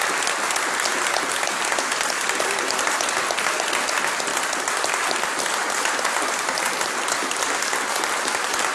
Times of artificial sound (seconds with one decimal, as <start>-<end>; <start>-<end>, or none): none